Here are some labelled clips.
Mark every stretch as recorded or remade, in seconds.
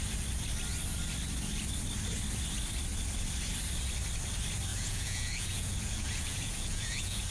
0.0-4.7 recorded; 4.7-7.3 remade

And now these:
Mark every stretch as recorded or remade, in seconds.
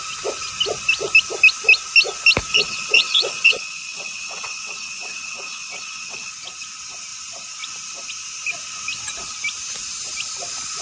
0.0-2.5 recorded; 2.5-6.3 remade; 6.3-10.8 recorded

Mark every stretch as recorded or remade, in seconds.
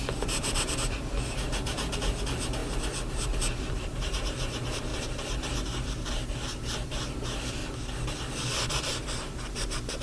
0.0-7.6 remade; 7.6-8.8 recorded; 8.8-10.0 remade